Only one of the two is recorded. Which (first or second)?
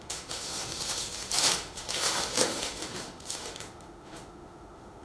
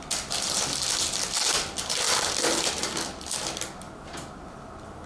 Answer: second